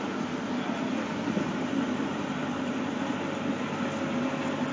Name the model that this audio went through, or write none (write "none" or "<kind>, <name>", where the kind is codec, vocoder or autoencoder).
none